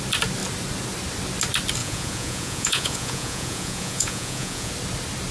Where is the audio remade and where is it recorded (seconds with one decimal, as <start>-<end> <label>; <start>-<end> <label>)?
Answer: 0.0-1.8 recorded; 1.8-4.7 remade; 4.7-5.3 recorded

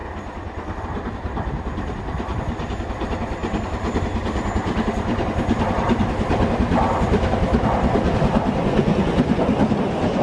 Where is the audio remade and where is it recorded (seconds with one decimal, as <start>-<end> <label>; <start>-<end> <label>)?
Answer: 0.0-8.6 recorded; 8.6-9.5 remade; 9.5-10.2 recorded

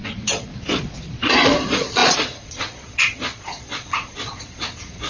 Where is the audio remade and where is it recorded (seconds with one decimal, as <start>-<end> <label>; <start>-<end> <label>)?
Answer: 0.0-5.1 remade

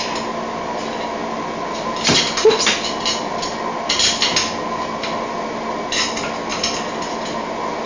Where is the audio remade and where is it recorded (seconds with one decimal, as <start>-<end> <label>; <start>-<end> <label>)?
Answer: 0.0-7.9 recorded